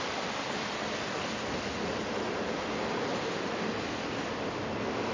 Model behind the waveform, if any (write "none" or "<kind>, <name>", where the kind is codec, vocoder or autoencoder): none